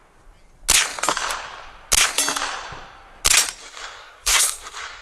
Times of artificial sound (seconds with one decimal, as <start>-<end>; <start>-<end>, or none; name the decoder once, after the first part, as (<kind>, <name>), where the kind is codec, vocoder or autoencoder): 3.6-5.0 (codec, SNAC)